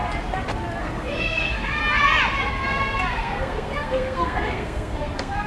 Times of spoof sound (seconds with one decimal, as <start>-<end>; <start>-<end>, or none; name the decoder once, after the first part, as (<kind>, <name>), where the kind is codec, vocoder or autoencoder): 0.8-1.8 (codec, SNAC); 2.5-5.5

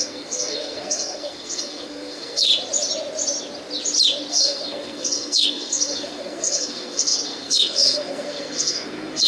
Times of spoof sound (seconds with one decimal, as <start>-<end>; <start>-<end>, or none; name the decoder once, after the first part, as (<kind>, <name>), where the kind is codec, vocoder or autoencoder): 0.0-2.5 (codec, SNAC); 4.3-9.3

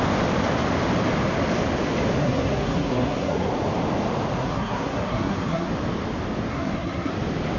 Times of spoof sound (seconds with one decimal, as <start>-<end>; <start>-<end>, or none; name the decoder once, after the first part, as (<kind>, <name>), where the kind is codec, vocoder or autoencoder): 2.2-3.5 (codec, SNAC); 4.4-5.7; 6.5-7.1